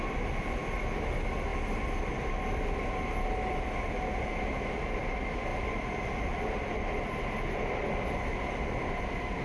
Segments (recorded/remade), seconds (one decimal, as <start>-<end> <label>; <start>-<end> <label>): 0.0-9.4 recorded